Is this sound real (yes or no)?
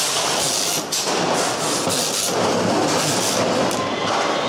yes